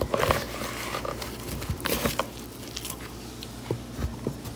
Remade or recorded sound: recorded